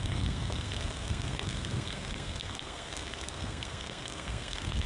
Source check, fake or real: fake